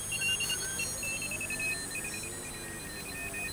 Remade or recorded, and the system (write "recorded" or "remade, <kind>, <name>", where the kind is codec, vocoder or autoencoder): recorded